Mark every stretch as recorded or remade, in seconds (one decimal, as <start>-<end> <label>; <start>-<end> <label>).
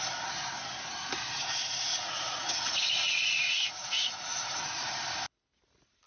0.0-1.9 recorded; 1.9-4.9 remade; 4.9-6.1 recorded